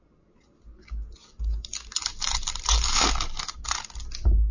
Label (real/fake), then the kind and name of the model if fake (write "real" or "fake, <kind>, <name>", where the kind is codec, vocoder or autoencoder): real